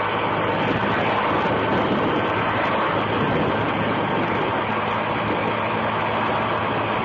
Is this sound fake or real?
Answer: real